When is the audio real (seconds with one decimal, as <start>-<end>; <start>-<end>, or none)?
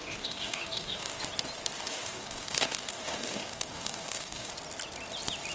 1.2-1.8; 4.5-5.5